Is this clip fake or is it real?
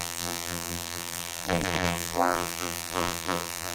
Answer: fake